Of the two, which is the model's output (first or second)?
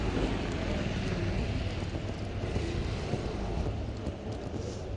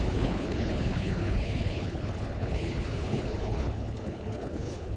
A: second